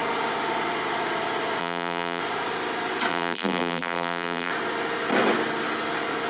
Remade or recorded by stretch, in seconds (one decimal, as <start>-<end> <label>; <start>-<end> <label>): 0.0-1.6 recorded; 1.6-2.2 remade; 2.2-3.1 recorded; 3.1-4.5 remade; 4.5-6.3 recorded